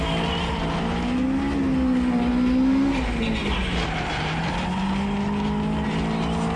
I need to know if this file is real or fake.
real